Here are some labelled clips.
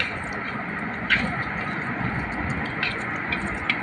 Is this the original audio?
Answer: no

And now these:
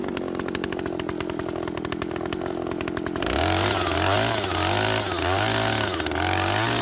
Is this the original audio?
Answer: yes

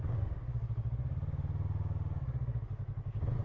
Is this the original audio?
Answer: yes